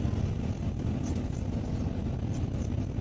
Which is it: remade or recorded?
recorded